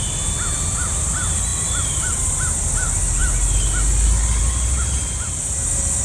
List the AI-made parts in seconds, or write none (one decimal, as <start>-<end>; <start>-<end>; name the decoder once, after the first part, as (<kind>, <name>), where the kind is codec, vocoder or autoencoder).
none